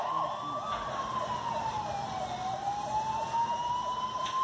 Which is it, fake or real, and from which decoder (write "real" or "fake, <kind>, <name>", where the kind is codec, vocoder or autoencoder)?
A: real